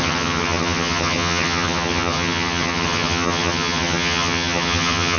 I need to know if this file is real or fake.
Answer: fake